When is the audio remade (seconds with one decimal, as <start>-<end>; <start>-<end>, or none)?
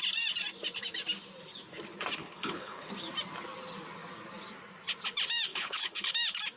2.2-2.9; 5.5-6.1